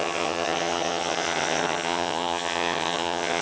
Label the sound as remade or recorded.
remade